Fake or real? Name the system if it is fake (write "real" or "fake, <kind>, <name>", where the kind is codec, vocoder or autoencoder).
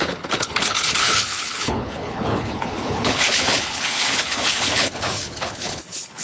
fake, codec, HILCodec